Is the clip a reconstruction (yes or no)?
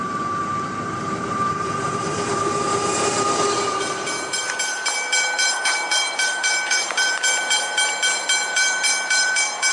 yes